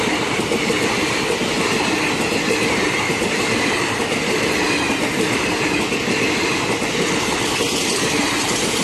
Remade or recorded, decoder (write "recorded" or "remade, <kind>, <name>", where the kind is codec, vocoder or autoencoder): recorded